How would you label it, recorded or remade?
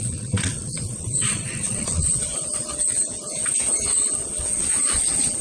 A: remade